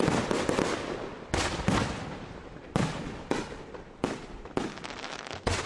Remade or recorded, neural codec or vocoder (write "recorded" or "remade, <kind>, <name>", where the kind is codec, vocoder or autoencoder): recorded